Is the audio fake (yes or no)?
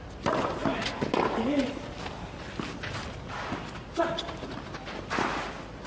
no